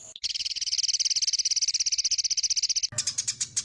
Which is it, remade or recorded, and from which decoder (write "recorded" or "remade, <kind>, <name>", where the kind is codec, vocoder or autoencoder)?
recorded